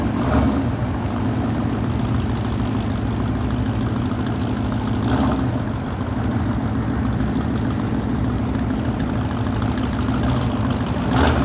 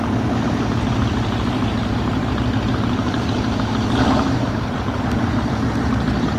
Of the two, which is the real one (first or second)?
first